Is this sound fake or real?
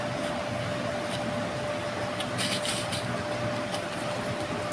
real